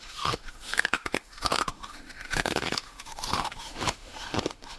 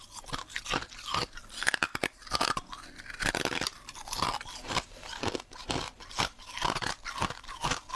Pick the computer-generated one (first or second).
first